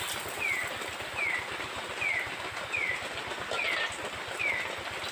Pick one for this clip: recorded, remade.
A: recorded